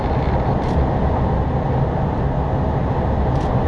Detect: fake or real real